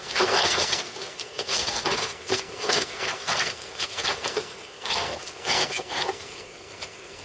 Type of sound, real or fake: fake